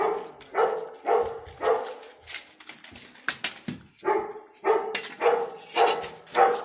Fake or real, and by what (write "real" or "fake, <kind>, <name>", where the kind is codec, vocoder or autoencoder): real